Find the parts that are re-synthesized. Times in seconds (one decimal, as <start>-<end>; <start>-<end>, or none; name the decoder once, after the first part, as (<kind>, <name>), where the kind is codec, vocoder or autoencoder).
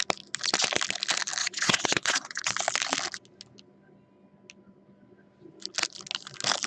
1.4-2.5 (vocoder, WaveNeXt)